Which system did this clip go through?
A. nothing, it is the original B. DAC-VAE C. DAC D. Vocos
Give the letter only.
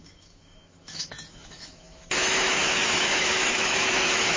B